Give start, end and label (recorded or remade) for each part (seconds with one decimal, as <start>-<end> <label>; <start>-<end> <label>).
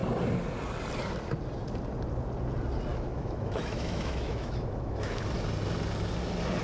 0.0-2.9 recorded; 2.9-5.2 remade; 5.2-6.6 recorded